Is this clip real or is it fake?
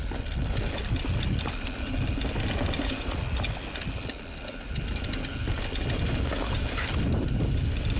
real